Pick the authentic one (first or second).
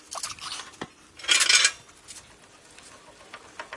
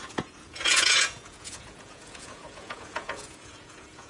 first